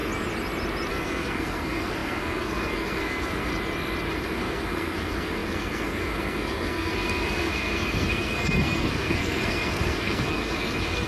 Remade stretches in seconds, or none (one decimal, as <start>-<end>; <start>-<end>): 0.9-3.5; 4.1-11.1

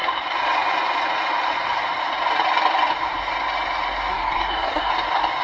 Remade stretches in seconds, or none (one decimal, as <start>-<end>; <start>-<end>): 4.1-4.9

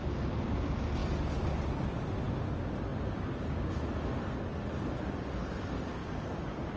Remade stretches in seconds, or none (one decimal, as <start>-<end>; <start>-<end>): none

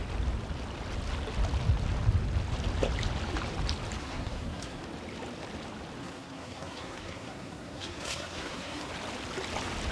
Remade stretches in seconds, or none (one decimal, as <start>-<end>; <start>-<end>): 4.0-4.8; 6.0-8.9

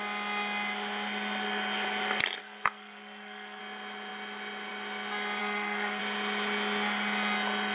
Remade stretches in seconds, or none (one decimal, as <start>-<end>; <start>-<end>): 2.4-3.6; 5.4-6.0

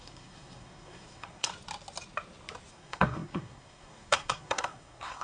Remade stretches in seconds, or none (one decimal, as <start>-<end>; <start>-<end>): 0.0-1.5; 2.7-5.2